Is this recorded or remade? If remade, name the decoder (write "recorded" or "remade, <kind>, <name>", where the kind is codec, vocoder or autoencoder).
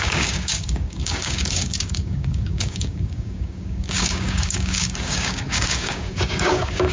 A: remade, codec, DAC